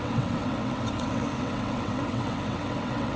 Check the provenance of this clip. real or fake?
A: fake